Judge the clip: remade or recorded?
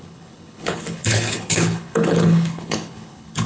remade